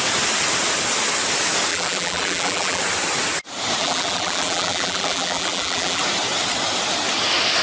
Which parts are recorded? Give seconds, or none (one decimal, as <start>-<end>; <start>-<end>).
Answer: 0.0-1.7; 2.8-3.8; 6.0-7.6